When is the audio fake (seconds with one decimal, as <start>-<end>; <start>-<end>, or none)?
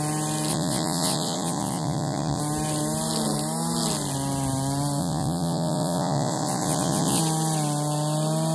0.5-2.4; 5.0-7.2